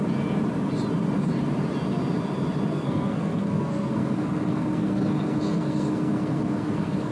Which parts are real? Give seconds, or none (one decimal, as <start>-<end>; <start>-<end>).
0.0-2.7